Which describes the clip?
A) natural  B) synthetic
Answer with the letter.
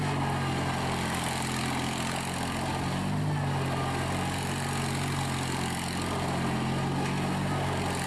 A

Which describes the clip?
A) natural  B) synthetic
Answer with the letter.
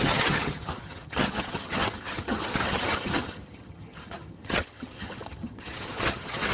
B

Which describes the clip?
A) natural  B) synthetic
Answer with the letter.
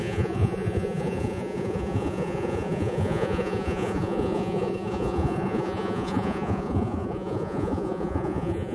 B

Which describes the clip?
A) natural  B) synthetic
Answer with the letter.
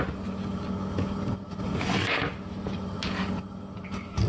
A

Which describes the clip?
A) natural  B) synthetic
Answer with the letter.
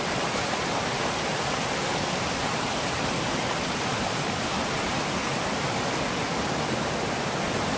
A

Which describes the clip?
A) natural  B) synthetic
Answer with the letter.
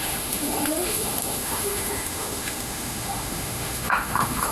B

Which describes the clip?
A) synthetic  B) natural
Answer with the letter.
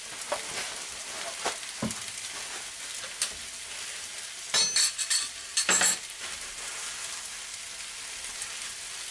B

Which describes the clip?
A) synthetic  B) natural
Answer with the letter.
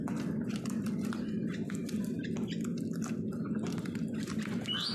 B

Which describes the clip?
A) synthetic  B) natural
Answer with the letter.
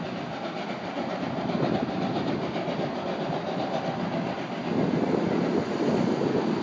B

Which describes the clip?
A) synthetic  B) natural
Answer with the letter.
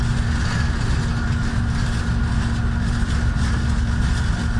B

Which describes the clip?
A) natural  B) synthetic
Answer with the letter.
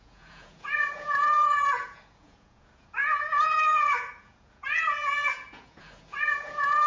B